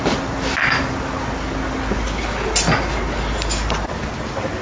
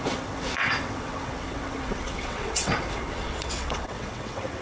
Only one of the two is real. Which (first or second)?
first